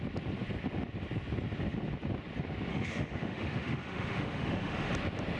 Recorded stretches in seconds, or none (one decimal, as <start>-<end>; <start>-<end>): 0.0-2.7; 4.9-5.4